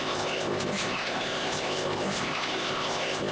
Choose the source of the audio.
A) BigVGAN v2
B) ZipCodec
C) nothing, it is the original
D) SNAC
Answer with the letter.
B